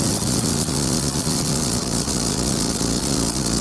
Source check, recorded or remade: remade